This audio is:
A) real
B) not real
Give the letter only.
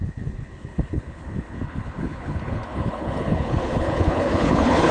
B